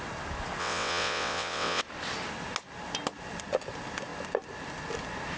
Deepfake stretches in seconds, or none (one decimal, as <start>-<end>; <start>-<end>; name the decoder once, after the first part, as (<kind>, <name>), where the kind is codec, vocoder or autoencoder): 0.6-1.8 (vocoder, WaveNeXt)